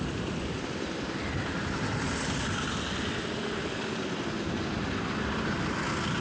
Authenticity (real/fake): real